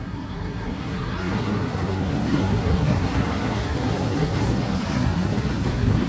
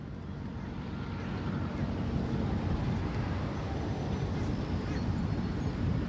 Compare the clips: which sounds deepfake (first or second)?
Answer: first